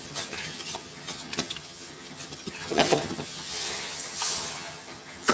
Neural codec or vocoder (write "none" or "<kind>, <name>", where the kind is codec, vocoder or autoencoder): vocoder, HiFi-GAN